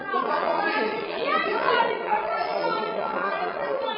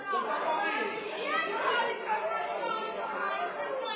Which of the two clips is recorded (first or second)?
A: second